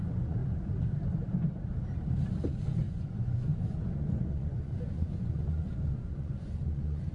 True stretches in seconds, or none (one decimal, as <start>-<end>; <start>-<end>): 0.4-2.9